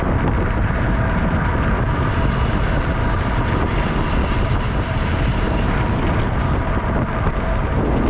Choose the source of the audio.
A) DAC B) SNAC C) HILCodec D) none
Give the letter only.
D